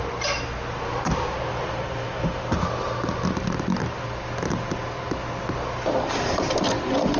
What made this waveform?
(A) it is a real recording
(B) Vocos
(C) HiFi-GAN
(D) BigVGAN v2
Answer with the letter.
A